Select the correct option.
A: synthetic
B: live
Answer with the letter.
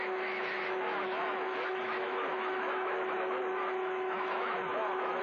A